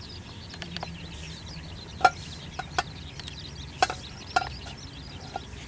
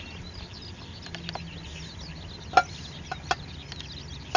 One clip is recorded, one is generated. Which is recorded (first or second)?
second